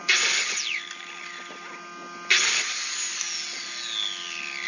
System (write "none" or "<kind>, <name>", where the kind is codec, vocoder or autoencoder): none